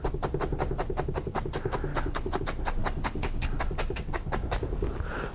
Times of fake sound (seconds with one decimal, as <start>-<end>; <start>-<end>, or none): 1.9-2.4; 2.8-3.6